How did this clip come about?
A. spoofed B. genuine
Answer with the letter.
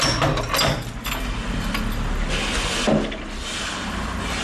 B